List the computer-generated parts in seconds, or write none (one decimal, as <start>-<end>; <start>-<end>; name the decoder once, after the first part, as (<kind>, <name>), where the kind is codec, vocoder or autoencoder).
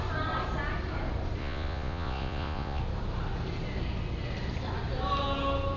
1.4-2.8 (vocoder, Vocos)